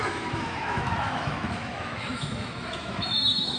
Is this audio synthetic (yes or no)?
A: yes